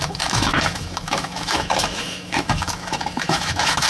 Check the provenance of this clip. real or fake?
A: fake